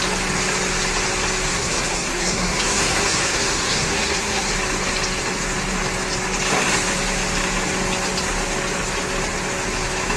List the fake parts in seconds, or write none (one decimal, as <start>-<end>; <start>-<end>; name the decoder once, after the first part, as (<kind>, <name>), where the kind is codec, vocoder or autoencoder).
1.5-4.5 (codec, SNAC)